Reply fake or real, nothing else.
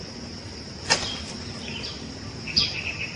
real